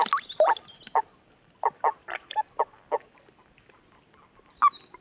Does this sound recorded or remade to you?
recorded